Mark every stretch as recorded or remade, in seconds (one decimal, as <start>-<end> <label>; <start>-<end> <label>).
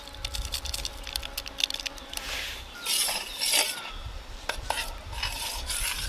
0.0-4.0 recorded; 4.0-6.1 remade